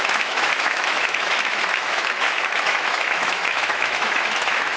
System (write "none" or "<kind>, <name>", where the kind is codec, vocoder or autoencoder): autoencoder, DAC-VAE